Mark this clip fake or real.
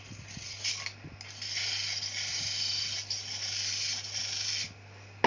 real